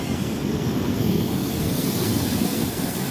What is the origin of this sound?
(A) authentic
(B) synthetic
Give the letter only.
B